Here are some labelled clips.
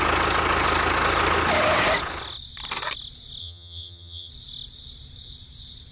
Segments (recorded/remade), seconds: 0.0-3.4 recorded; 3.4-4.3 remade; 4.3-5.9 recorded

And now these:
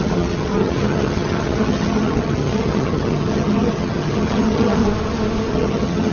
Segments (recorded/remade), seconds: 0.0-4.8 remade; 4.8-5.5 recorded; 5.5-6.1 remade

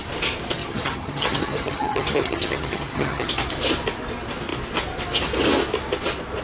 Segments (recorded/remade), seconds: 0.0-0.6 recorded; 0.6-3.3 remade; 3.3-6.4 recorded

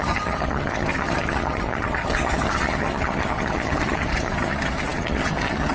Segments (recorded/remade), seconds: 0.0-5.7 remade

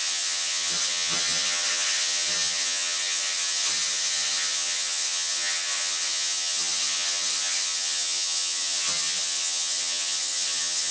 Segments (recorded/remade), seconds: 0.0-10.9 remade

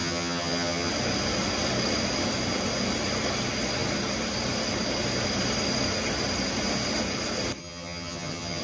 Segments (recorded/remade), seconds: 0.0-0.9 remade; 0.9-7.6 recorded; 7.6-8.6 remade

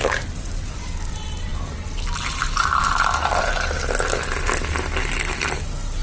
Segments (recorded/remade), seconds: 0.0-6.0 recorded